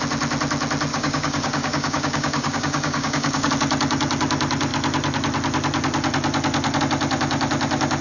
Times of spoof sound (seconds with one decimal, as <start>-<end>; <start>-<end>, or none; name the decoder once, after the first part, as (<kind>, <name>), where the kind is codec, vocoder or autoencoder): 0.9-3.5 (codec, DAC)